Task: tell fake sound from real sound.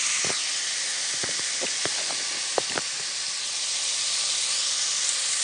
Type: real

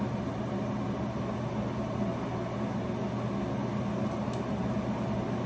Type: real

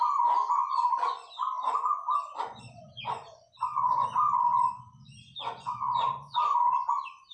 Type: fake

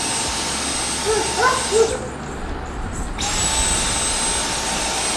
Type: real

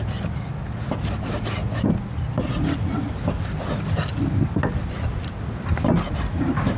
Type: real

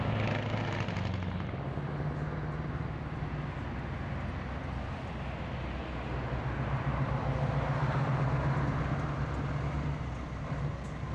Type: real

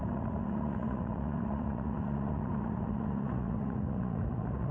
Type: fake